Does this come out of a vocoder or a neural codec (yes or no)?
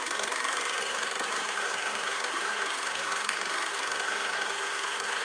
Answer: yes